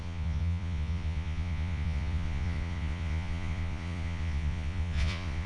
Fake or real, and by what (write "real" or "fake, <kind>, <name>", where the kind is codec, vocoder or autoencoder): fake, vocoder, Vocos